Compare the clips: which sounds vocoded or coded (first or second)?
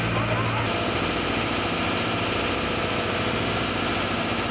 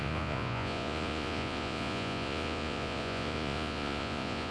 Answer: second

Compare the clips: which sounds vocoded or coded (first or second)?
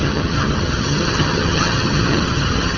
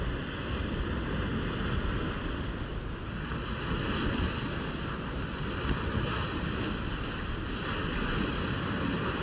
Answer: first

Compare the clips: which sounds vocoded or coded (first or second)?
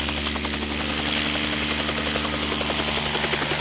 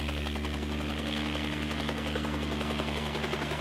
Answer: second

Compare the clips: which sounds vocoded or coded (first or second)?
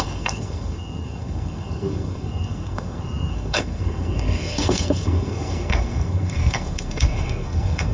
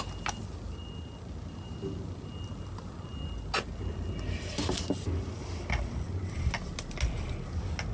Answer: first